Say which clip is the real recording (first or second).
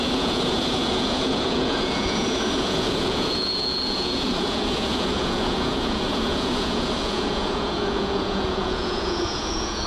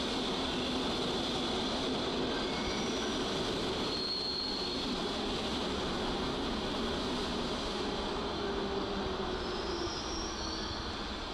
second